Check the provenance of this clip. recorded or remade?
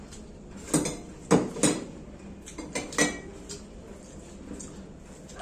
recorded